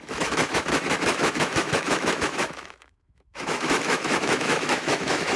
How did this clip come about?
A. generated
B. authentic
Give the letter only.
A